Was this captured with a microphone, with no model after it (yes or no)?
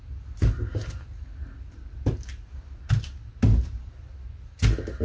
yes